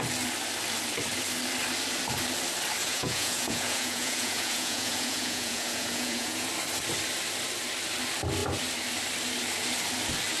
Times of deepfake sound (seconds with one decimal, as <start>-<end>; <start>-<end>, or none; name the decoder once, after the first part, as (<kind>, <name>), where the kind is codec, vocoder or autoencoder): 2.8-6.5 (vocoder, Vocos)